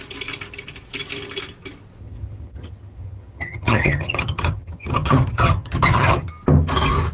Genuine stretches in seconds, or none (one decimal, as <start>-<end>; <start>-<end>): 0.0-2.0; 6.3-7.1